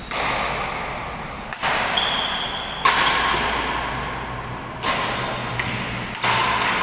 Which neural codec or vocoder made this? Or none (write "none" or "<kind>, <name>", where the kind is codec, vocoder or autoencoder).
none